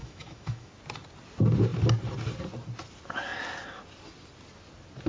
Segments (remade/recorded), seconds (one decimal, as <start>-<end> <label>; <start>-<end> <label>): 0.0-0.7 remade; 0.7-5.1 recorded